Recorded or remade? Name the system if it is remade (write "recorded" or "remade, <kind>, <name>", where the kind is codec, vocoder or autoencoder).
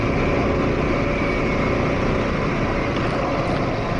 recorded